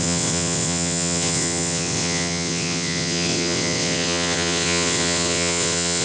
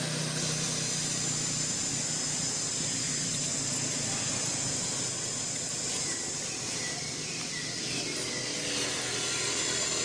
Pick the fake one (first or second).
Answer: first